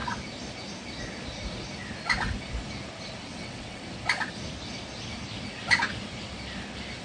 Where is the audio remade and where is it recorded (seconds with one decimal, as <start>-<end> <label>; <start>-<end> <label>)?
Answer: 0.0-3.3 recorded; 3.3-3.8 remade; 3.8-7.0 recorded